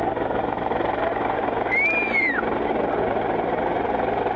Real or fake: real